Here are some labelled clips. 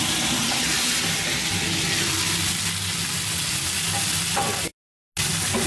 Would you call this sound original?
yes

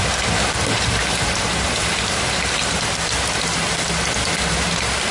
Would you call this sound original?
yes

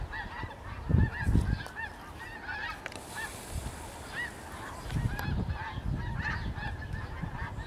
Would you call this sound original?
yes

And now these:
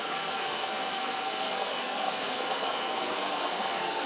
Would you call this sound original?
no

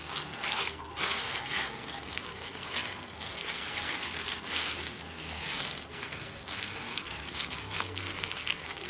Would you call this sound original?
no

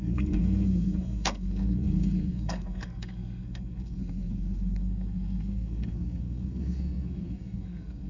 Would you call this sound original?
no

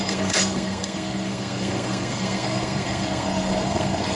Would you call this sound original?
no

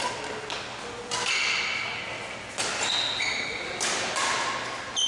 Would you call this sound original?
yes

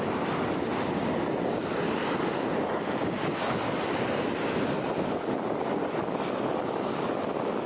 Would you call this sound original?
yes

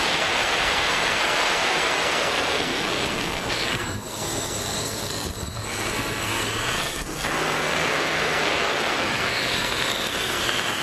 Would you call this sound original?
no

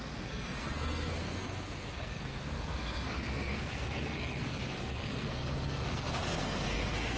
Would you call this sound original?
no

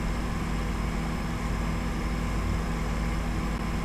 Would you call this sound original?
yes